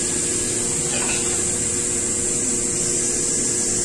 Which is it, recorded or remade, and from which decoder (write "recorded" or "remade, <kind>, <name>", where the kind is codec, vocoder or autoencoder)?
recorded